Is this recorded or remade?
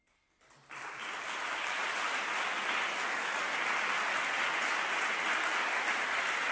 recorded